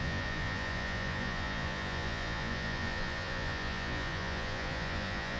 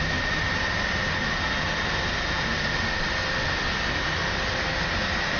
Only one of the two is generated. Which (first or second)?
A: first